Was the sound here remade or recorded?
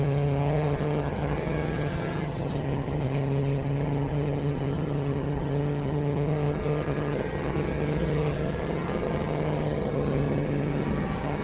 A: remade